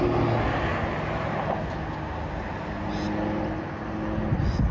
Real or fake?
real